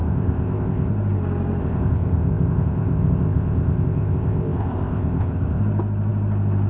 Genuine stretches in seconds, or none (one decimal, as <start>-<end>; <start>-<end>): 0.9-1.6; 5.6-6.7